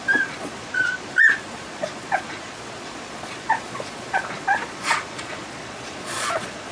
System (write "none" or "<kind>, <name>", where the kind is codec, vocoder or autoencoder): vocoder, Vocos